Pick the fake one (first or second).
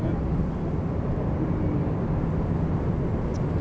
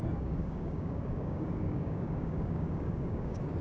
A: second